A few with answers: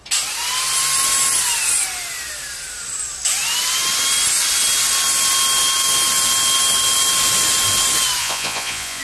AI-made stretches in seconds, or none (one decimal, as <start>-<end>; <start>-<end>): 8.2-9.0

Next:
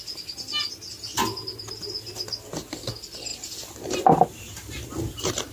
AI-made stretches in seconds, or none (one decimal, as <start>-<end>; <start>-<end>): none

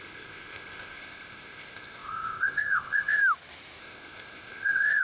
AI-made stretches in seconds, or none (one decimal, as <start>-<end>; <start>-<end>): 0.0-3.2; 3.8-5.0

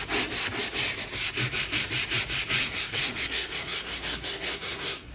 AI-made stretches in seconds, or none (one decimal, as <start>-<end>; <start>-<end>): 2.6-5.1

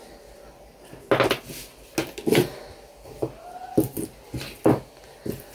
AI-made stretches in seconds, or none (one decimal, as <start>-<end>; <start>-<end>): none